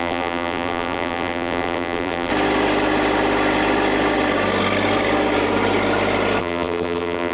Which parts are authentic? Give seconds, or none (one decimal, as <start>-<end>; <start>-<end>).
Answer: 2.3-6.4